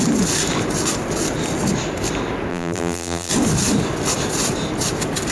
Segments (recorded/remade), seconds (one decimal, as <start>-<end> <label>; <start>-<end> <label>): 0.0-2.5 recorded; 2.5-3.3 remade; 3.3-5.3 recorded